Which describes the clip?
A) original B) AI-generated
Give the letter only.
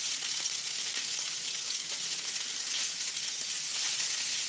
B